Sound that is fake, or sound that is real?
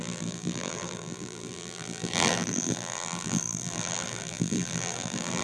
fake